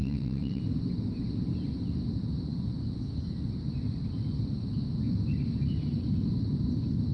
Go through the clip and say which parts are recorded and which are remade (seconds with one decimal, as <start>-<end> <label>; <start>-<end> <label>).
0.0-0.6 remade; 0.6-7.1 recorded